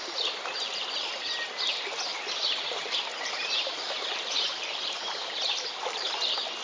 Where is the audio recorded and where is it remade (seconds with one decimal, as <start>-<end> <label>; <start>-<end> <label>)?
0.0-0.5 recorded; 0.5-1.5 remade; 1.5-2.1 recorded; 2.1-6.1 remade; 6.1-6.6 recorded